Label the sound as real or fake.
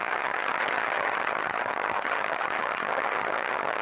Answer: fake